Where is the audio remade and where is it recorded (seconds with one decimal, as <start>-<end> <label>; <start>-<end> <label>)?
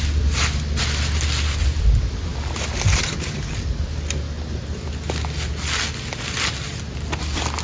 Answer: 0.0-7.6 recorded